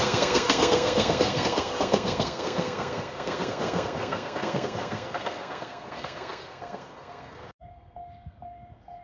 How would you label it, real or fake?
fake